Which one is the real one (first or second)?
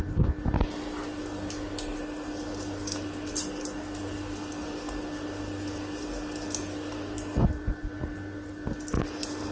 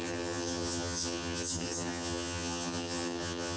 first